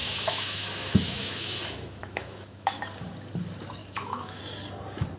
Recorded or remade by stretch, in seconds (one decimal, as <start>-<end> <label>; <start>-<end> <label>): 0.0-1.5 remade; 1.5-2.0 recorded; 2.0-2.8 remade; 2.8-3.8 recorded; 3.8-4.4 remade; 4.4-5.2 recorded